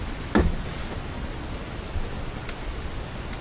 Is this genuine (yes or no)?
yes